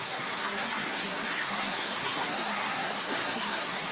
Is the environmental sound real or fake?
fake